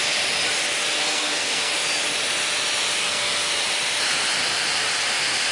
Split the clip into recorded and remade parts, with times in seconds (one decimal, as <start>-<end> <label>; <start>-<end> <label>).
0.0-1.0 recorded; 1.0-1.7 remade; 1.7-3.0 recorded; 3.0-3.5 remade; 3.5-5.5 recorded